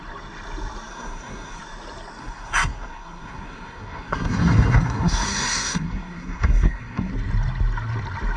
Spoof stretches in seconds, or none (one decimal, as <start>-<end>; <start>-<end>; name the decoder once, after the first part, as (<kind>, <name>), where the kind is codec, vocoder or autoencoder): 0.9-1.6 (codec, SNAC); 2.2-7.1